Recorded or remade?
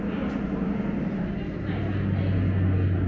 recorded